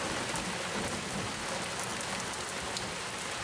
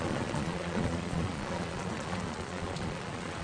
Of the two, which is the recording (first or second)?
first